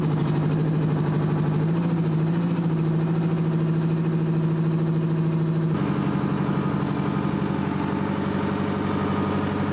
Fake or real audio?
real